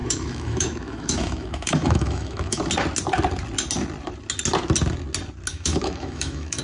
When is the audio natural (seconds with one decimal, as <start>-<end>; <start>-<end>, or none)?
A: 2.6-5.5